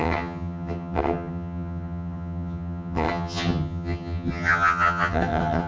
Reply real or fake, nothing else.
fake